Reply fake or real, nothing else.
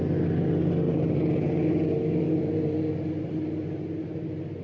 real